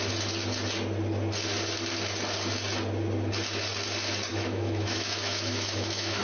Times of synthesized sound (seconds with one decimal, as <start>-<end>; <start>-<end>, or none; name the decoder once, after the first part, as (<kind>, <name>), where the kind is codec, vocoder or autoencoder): 4.3-6.2 (autoencoder, DAC-VAE)